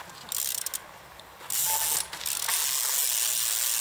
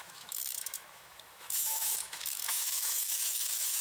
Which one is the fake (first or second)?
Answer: second